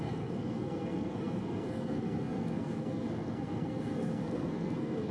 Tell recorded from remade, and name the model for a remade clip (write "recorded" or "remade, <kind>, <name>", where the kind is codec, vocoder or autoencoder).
remade, codec, SNAC